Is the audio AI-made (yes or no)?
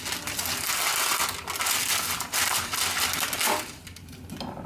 no